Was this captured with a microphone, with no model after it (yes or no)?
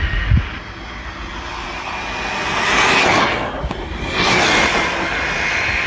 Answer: yes